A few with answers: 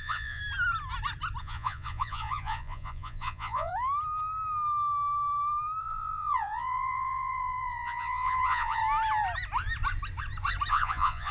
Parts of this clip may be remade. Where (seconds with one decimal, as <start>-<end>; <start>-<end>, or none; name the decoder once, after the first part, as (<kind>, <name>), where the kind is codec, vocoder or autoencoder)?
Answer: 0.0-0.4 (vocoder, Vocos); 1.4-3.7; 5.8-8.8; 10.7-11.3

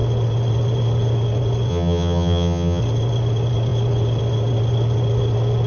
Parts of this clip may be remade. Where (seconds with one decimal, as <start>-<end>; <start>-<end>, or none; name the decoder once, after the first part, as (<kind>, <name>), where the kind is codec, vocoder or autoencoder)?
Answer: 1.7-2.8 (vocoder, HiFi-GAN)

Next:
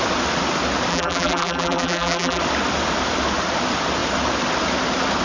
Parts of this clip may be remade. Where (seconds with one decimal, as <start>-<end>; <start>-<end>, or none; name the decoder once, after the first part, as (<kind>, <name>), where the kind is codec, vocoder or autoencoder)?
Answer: 0.9-2.4 (vocoder, BigVGAN v2)